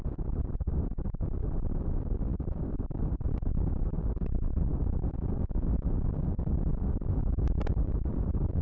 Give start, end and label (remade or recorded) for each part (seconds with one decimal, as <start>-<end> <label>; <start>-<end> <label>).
0.0-8.6 recorded